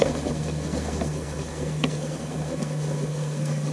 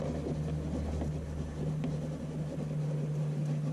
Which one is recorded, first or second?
second